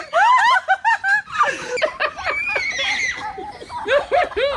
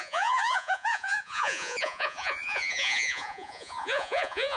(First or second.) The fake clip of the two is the second